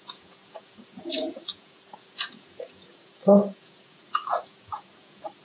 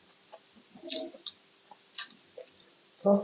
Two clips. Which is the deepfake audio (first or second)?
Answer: first